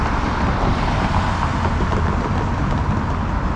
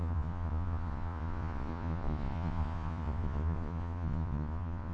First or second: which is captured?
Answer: first